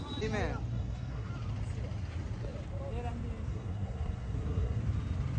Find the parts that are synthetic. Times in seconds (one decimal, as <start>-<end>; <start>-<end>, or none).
0.7-1.3; 3.5-4.8